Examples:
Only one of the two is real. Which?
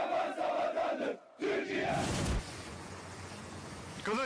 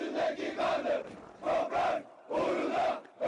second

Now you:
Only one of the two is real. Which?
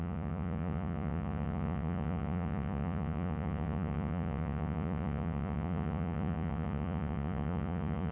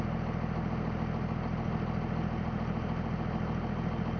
second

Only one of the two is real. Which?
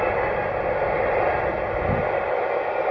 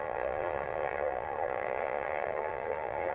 first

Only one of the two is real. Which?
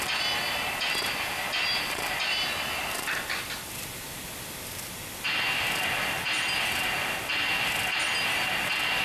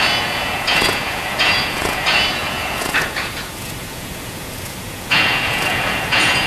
first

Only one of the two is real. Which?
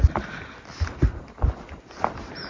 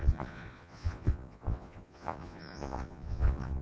first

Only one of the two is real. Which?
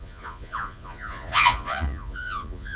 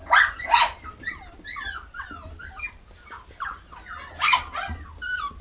second